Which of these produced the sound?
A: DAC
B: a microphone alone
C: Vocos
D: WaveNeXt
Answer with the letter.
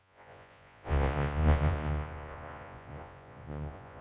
C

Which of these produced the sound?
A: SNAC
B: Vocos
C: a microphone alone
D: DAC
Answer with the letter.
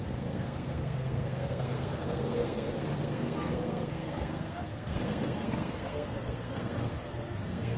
A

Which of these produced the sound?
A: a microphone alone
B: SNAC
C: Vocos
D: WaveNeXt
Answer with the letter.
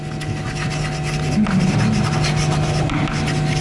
A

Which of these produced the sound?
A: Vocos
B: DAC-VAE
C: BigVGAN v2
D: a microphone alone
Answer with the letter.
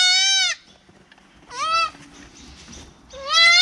D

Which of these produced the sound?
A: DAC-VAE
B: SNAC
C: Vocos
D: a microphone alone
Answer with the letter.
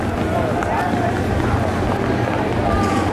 D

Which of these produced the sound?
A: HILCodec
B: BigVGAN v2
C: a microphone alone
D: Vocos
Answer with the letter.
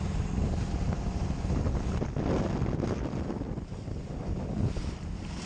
C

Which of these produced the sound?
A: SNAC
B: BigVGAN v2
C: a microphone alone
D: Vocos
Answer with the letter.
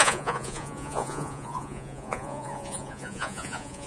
D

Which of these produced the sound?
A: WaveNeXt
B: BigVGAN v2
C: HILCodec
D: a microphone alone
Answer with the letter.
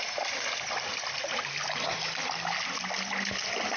D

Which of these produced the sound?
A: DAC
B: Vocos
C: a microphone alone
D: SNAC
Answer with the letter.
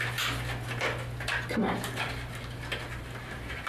C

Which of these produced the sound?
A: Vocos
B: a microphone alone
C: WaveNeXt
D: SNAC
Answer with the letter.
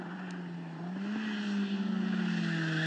B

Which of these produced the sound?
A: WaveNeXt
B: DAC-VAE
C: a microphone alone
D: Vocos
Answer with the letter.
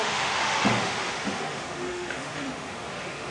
B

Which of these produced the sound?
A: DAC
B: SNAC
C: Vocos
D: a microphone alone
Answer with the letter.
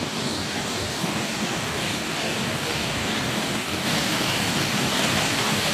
A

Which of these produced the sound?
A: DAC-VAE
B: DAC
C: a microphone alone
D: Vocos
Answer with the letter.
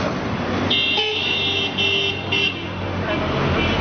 C